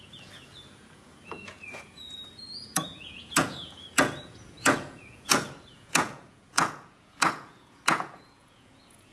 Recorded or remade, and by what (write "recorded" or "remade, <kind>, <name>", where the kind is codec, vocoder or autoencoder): remade, vocoder, Vocos